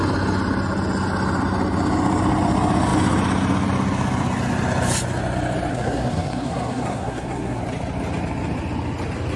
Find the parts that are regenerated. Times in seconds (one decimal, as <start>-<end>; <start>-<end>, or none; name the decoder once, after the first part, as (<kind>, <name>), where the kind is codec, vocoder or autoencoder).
5.7-7.6 (codec, SNAC)